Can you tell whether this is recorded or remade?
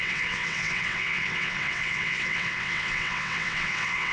remade